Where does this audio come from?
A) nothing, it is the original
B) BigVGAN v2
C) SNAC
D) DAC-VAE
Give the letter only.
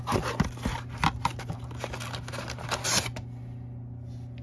A